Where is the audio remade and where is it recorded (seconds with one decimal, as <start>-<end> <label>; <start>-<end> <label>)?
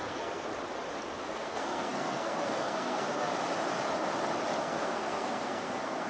0.0-0.5 remade; 0.5-1.2 recorded; 1.2-3.3 remade; 3.3-4.6 recorded; 4.6-6.1 remade